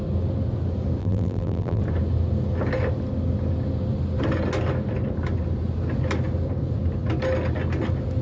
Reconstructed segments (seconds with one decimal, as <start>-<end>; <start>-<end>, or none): 1.0-1.8